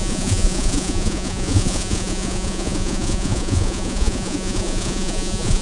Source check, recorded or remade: remade